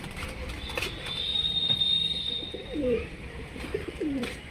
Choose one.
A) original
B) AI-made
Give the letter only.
B